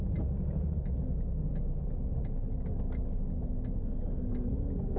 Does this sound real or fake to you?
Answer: real